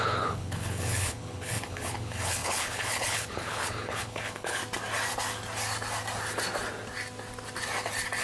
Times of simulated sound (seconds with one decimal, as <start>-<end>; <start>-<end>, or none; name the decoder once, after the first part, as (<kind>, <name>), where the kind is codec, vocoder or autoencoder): 0.0-4.6 (codec, HILCodec)